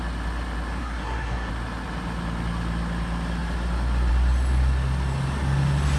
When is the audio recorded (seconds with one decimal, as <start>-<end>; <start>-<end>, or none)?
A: 0.0-0.8; 1.5-6.0